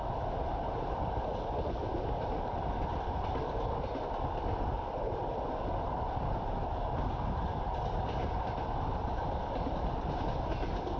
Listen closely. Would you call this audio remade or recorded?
recorded